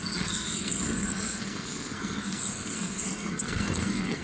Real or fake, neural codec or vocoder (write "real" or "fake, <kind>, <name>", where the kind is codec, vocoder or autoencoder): fake, codec, SNAC